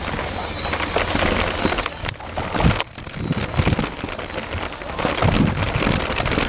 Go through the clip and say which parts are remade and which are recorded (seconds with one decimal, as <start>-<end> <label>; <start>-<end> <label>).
0.0-6.5 recorded